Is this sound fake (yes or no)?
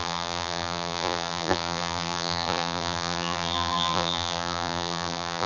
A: yes